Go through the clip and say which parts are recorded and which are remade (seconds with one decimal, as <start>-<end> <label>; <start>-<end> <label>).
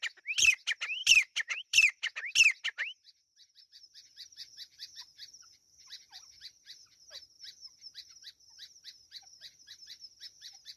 0.0-1.0 recorded; 1.0-2.3 remade; 2.3-10.8 recorded